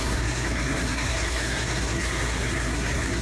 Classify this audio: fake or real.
fake